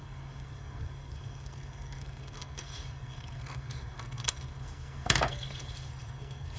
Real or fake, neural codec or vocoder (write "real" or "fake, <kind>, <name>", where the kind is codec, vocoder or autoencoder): fake, codec, SNAC